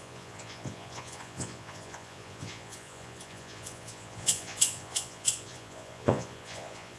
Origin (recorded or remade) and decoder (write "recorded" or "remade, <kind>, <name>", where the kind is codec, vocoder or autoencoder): remade, vocoder, Vocos